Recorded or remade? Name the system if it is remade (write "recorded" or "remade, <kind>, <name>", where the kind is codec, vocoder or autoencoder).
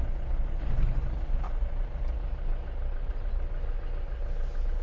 recorded